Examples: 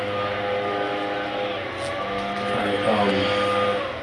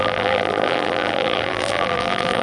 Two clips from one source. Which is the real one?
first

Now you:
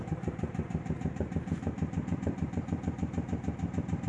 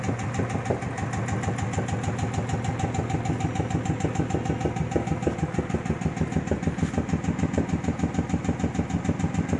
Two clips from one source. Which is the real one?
second